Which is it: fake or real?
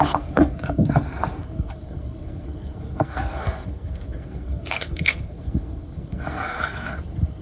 fake